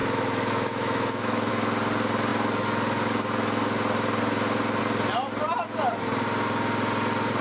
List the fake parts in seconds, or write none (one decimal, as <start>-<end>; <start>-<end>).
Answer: 0.0-1.5